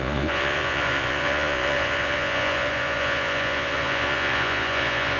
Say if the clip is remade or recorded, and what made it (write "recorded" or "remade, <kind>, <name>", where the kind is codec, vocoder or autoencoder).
remade, vocoder, Vocos